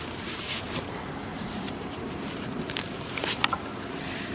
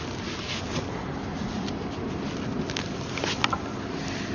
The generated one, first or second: first